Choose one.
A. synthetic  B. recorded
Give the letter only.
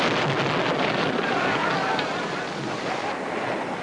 B